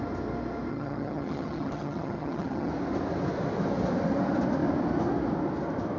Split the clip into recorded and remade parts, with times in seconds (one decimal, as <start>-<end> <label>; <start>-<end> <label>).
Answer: 0.0-0.7 recorded; 0.7-2.7 remade; 2.7-6.0 recorded